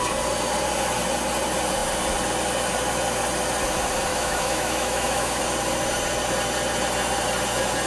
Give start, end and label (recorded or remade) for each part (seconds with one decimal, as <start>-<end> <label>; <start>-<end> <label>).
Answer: 0.0-4.1 recorded; 4.1-5.4 remade; 5.4-7.9 recorded